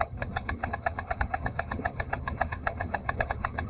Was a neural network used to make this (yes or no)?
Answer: yes